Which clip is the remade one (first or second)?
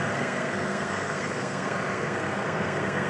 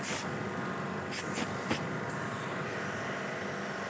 first